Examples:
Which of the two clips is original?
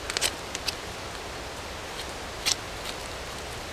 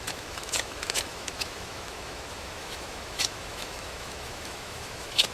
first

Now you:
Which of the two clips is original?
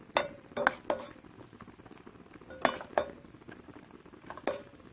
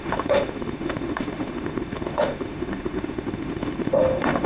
first